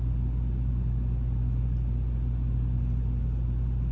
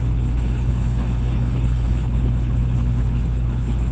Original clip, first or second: first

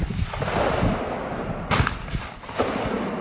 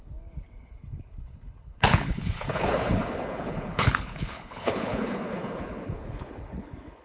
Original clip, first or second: first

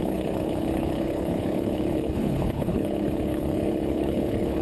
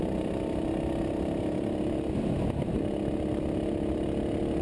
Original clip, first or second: second